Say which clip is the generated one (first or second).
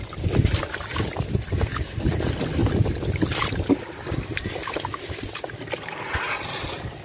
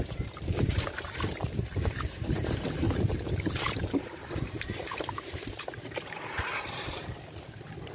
second